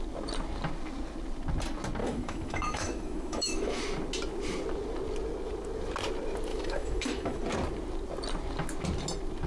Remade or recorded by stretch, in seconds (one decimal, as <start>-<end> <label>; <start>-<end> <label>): 0.0-2.0 recorded; 2.0-3.8 remade; 3.8-6.5 recorded; 6.5-7.4 remade; 7.4-9.5 recorded